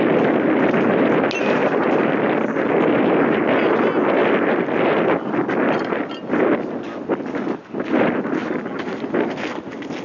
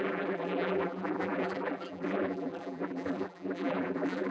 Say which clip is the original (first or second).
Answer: first